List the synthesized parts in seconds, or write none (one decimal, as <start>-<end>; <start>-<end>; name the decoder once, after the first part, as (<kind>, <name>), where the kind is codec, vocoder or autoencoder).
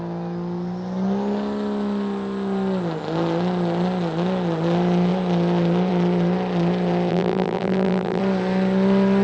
7.1-8.2 (vocoder, BigVGAN v2)